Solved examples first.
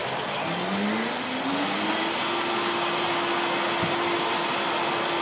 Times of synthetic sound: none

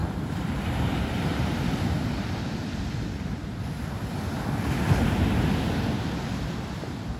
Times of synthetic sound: 0.0-3.5 (vocoder, BigVGAN v2)